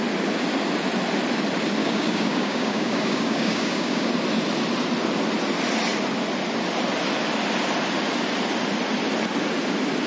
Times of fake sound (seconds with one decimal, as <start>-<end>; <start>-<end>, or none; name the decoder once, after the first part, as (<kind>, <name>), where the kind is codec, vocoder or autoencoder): 1.8-4.1 (codec, DAC)